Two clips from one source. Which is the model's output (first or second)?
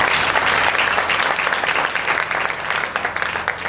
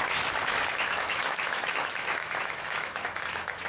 second